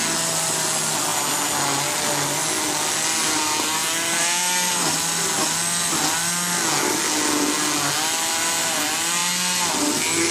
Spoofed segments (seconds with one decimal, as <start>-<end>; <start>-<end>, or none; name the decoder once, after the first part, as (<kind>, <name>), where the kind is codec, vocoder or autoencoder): none